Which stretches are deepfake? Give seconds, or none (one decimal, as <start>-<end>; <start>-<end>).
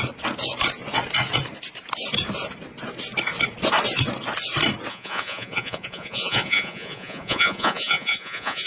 4.9-8.7